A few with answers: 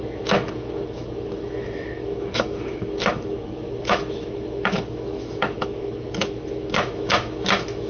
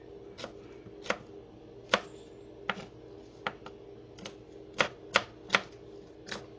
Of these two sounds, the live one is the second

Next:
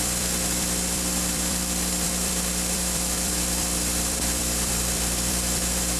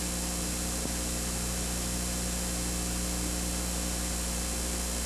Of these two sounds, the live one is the second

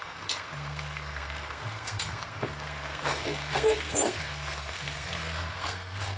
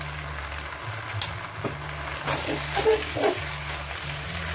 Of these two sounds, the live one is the second